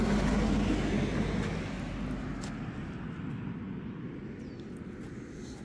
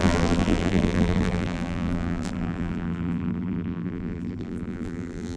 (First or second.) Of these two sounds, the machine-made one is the second